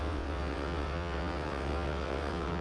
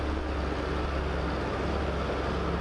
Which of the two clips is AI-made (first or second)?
first